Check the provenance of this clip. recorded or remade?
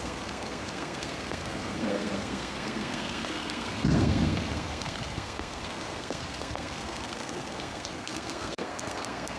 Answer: remade